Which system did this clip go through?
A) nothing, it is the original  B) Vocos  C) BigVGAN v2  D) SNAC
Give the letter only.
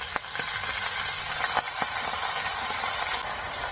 A